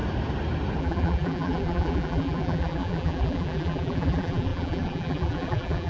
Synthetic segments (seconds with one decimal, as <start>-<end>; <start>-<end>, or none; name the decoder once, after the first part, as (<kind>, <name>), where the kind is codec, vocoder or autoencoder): 0.8-5.9 (vocoder, BigVGAN v2)